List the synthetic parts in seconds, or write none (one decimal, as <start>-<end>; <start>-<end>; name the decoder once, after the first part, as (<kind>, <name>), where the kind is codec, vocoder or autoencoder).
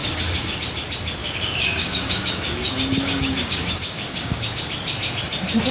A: 0.0-0.6 (codec, DAC); 1.2-4.6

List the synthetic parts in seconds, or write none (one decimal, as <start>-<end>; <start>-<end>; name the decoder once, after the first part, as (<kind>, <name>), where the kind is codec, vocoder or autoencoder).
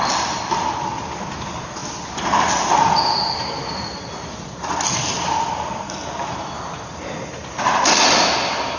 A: none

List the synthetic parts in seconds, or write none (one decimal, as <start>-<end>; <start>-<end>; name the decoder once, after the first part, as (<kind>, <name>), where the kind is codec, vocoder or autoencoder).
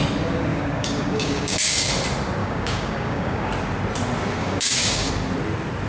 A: 0.5-1.9 (codec, DAC); 2.4-3.5; 4.4-5.1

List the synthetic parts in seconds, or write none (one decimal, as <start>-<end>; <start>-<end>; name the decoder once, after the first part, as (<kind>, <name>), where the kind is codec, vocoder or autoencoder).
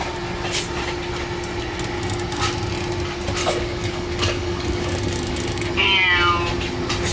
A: 3.4-5.7 (codec, DAC)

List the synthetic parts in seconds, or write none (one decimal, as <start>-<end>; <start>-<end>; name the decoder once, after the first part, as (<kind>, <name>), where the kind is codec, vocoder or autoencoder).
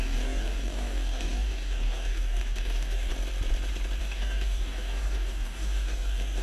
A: 0.0-3.1 (codec, DAC); 4.0-6.4